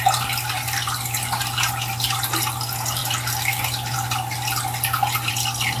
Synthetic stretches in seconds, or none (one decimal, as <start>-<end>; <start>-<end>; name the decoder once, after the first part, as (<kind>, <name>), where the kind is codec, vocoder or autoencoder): none